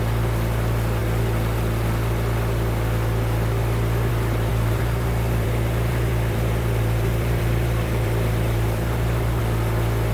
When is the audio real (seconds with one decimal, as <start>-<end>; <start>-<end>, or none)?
0.0-4.5; 9.4-10.1